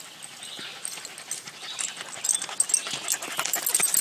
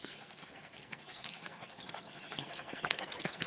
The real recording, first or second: first